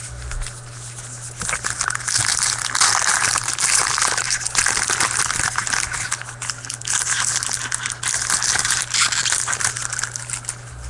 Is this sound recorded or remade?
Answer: recorded